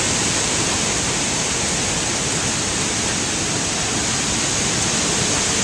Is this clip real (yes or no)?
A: yes